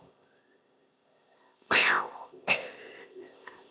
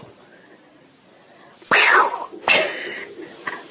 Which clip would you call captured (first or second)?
second